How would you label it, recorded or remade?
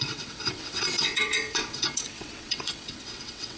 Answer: remade